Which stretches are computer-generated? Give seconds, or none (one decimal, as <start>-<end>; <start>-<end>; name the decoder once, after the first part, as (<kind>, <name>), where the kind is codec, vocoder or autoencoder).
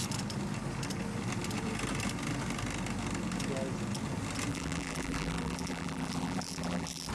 4.5-7.1 (vocoder, BigVGAN v2)